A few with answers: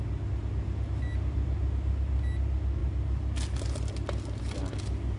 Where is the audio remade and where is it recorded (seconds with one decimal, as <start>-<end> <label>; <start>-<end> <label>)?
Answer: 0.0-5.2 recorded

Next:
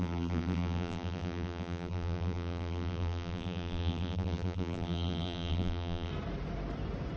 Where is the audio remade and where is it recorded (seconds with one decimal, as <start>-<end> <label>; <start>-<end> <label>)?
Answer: 0.0-6.1 remade; 6.1-7.2 recorded

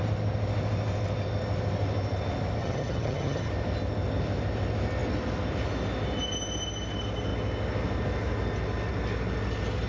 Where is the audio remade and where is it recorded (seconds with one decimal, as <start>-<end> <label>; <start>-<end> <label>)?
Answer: 0.0-2.6 recorded; 2.6-3.5 remade; 3.5-9.9 recorded